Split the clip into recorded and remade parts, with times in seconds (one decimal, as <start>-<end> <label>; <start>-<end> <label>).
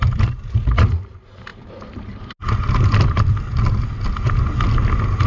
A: 0.0-5.3 recorded